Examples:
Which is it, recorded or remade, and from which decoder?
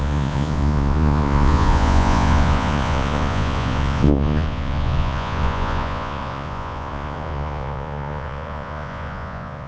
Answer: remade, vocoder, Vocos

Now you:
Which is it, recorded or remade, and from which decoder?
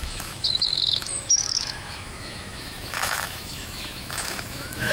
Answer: remade, autoencoder, DAC-VAE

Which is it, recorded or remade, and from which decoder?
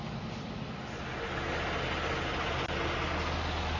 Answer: recorded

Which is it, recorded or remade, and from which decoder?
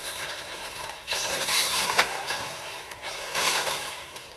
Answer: remade, codec, SNAC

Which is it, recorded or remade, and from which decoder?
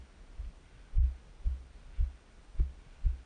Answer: recorded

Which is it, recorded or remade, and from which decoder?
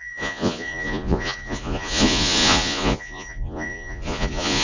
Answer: remade, vocoder, Vocos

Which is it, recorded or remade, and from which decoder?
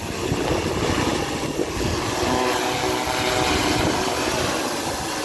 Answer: recorded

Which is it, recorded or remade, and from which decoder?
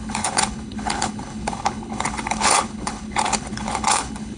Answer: remade, codec, HILCodec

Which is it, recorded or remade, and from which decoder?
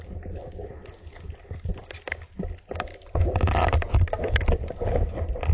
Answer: recorded